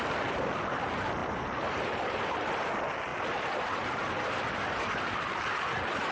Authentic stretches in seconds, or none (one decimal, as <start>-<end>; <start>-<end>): 0.0-1.2; 2.7-3.1; 5.4-6.1